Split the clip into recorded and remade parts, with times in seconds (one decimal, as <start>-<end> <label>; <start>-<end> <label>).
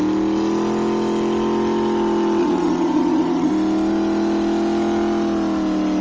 0.0-2.4 recorded; 2.4-3.5 remade; 3.5-6.0 recorded